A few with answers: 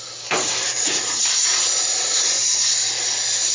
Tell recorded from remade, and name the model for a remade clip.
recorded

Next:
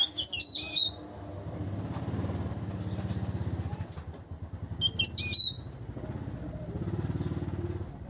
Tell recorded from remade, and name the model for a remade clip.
recorded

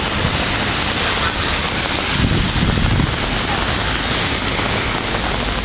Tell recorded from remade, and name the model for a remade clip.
recorded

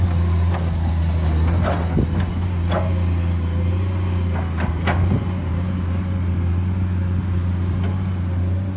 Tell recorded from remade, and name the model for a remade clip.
recorded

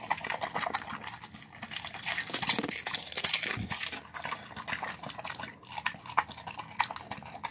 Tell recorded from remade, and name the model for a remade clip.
recorded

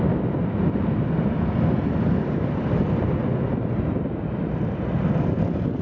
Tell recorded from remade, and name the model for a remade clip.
recorded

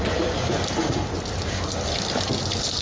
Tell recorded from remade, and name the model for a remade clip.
recorded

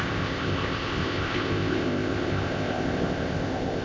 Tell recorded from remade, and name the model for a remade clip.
remade, codec, ZipCodec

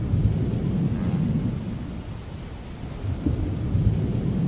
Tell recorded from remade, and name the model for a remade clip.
recorded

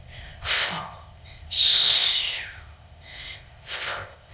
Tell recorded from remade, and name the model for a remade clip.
remade, codec, ZipCodec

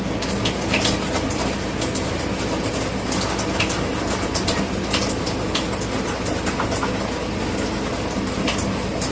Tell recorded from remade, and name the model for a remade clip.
recorded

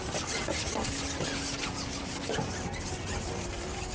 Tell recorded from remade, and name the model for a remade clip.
recorded